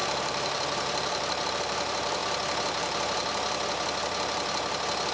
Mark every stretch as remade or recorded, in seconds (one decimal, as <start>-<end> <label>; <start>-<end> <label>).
0.0-2.2 remade; 2.2-5.1 recorded